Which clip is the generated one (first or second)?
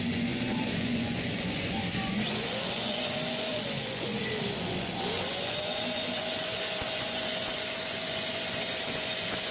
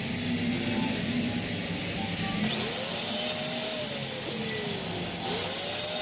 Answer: first